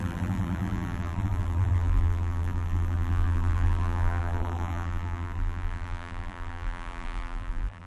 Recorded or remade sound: remade